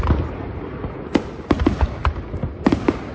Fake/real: real